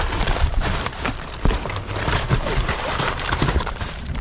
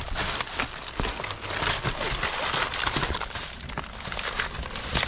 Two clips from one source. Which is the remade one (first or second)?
first